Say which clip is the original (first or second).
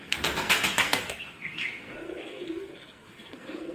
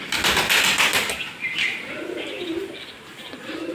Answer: second